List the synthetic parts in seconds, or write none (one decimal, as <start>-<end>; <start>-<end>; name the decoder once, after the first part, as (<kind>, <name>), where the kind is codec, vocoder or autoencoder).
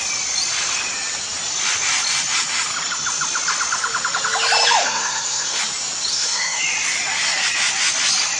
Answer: 4.8-5.6 (codec, SNAC); 6.1-6.6